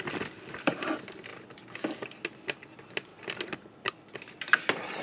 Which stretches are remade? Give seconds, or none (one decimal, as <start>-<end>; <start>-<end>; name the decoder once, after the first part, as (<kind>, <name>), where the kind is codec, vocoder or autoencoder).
none